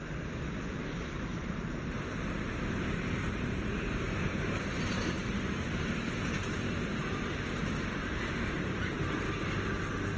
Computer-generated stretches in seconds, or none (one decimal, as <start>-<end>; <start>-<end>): 0.0-1.3; 3.2-10.2